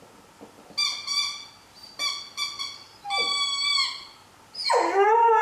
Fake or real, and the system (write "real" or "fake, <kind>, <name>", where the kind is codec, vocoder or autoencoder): real